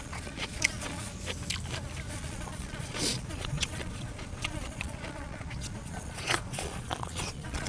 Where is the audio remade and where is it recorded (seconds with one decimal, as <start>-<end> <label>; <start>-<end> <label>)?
0.0-1.1 remade; 1.1-2.1 recorded; 2.1-7.7 remade